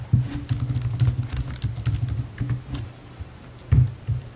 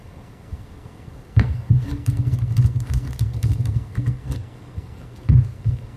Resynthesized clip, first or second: second